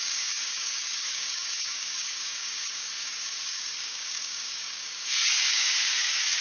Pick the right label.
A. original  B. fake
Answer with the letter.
B